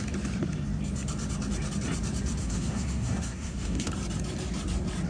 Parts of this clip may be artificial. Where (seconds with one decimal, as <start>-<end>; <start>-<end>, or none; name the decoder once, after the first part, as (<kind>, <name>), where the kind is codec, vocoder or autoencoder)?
2.4-3.9 (codec, SNAC)